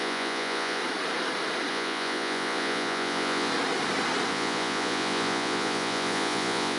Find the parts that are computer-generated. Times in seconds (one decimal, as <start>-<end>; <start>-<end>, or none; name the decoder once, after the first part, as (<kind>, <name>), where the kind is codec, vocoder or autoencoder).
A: 0.0-0.8 (vocoder, Vocos); 1.7-3.5; 4.3-6.8

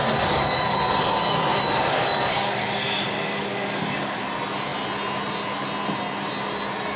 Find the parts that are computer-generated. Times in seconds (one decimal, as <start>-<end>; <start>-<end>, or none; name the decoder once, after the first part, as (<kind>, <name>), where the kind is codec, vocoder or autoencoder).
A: 0.0-4.2 (codec, DAC)

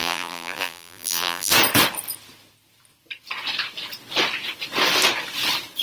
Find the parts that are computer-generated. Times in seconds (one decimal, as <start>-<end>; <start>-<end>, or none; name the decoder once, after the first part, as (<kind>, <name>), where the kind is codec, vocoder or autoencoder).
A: 0.0-1.5 (vocoder, BigVGAN v2)